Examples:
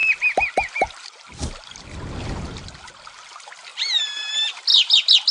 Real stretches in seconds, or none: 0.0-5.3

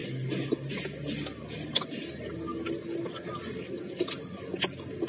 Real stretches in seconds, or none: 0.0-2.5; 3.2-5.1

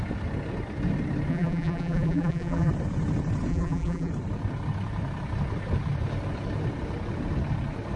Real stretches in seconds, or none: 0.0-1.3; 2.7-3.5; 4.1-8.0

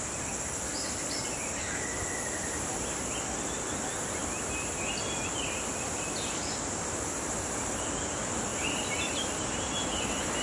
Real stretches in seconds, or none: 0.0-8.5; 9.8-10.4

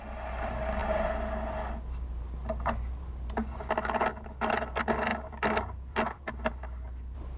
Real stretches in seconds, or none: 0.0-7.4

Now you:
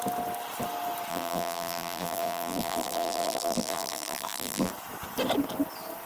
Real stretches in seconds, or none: 0.0-1.1; 4.7-6.0

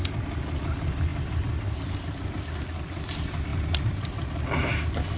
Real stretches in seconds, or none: 0.0-1.1; 1.9-5.2